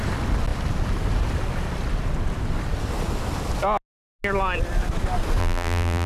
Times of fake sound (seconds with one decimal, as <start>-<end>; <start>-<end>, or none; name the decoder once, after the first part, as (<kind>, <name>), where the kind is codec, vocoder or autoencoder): 5.4-6.1 (vocoder, BigVGAN v2)